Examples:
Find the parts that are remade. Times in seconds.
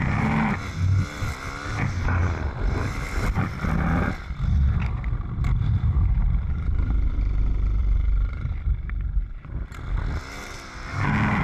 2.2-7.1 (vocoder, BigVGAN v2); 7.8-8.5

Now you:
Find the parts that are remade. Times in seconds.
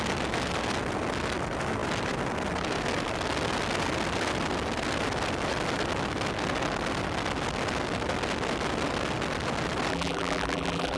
9.9-11.0 (vocoder, BigVGAN v2)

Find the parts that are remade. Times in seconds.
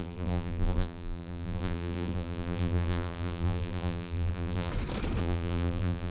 0.0-4.7 (vocoder, BigVGAN v2); 5.2-6.1